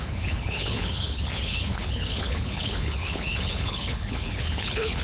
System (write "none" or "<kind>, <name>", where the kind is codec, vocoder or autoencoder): codec, HILCodec